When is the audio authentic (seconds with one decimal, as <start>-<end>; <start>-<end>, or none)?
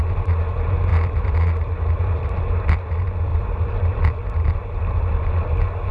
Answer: 0.0-0.9; 2.4-3.3; 5.3-5.9